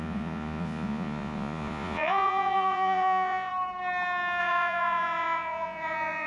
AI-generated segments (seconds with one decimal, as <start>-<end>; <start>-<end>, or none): 0.0-3.5; 4.4-6.3